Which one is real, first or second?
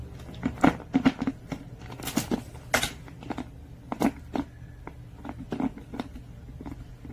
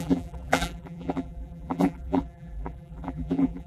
first